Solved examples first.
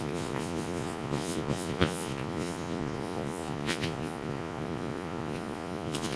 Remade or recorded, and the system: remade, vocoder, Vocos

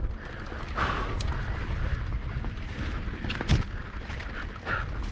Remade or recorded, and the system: recorded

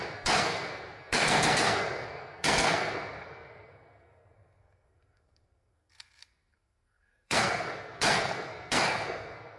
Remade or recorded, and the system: remade, codec, SNAC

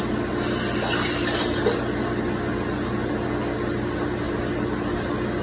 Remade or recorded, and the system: recorded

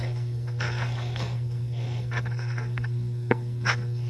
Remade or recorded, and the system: remade, codec, SNAC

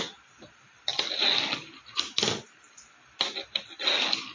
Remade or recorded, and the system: recorded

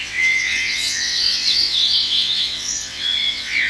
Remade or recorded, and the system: remade, vocoder, WaveNeXt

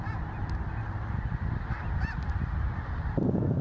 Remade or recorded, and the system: recorded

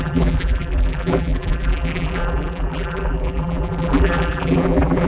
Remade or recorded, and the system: remade, vocoder, BigVGAN v2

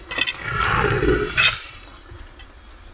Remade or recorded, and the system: recorded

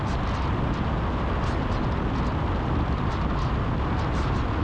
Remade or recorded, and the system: recorded